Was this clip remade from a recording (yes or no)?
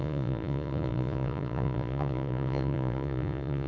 yes